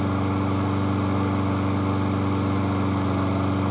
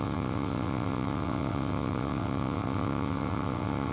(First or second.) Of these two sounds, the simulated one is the second